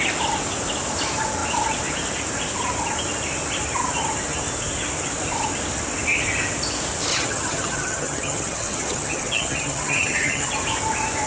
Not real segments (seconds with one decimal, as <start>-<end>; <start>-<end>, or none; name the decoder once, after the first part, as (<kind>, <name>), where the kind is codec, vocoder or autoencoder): 7.1-10.5 (vocoder, HiFi-GAN)